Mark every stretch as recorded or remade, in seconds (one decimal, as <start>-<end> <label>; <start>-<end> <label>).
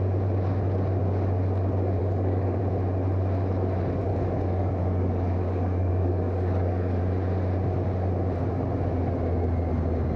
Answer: 0.0-2.0 recorded; 2.0-2.6 remade; 2.6-4.1 recorded; 4.1-7.0 remade; 7.0-10.2 recorded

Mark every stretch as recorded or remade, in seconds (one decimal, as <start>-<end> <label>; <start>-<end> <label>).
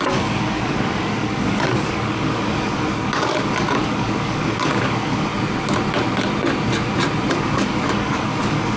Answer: 0.0-5.3 remade; 5.3-7.3 recorded; 7.3-8.8 remade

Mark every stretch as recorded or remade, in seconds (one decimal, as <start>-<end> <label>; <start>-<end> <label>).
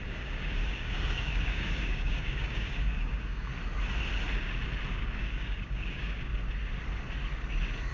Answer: 0.0-3.5 remade; 3.5-4.9 recorded; 4.9-6.3 remade; 6.3-7.9 recorded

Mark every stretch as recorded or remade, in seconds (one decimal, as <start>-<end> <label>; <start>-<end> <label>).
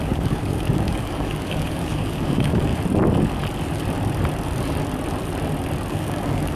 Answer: 0.0-2.7 remade; 2.7-5.9 recorded; 5.9-6.6 remade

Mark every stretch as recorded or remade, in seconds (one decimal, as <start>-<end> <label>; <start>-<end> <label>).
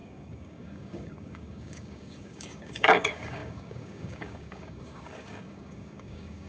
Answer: 0.0-6.5 remade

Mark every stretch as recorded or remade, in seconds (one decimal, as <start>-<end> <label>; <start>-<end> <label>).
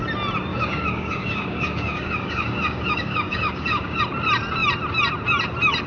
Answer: 0.0-0.5 recorded; 0.5-4.0 remade; 4.0-5.9 recorded